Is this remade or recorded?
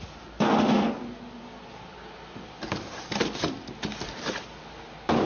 recorded